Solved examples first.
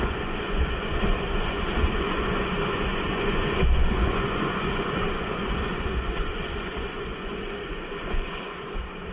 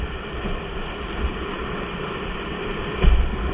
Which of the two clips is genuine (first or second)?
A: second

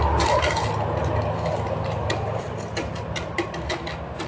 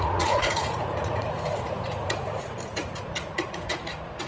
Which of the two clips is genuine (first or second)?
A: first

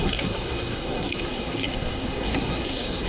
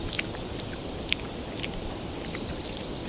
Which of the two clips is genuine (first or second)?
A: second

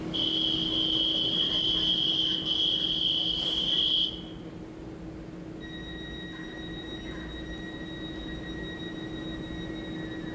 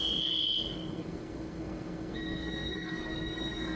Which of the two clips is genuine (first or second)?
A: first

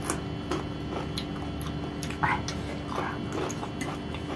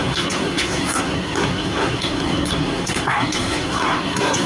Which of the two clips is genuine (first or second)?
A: first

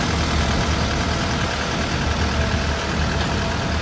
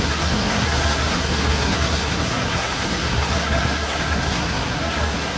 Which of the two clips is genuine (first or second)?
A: first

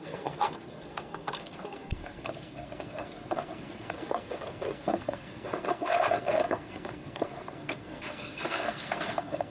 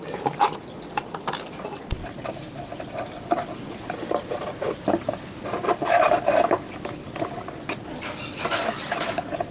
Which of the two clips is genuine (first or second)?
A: second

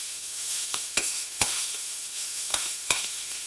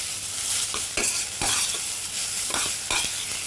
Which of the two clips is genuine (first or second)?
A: second